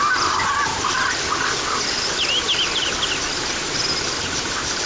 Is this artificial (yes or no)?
no